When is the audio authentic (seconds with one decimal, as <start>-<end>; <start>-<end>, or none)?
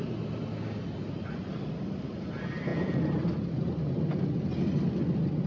0.0-5.5